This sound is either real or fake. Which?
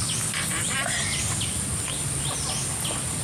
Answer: real